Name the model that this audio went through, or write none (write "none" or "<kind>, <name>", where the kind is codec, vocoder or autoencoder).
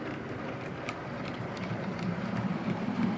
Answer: vocoder, BigVGAN v2